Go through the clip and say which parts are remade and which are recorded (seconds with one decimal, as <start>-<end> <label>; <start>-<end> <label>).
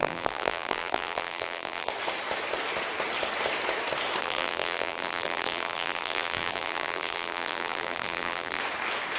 0.0-1.9 remade; 1.9-4.2 recorded; 4.2-8.6 remade; 8.6-9.2 recorded